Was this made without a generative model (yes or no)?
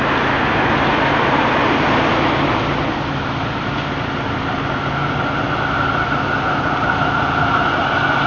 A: yes